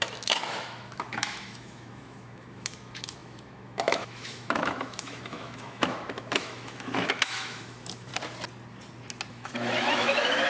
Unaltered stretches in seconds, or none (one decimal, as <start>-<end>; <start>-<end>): 8.1-9.3